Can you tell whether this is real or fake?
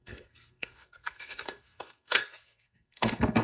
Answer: fake